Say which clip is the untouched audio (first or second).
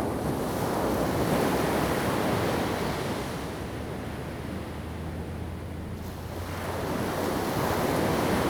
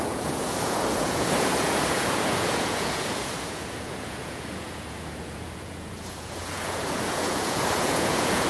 first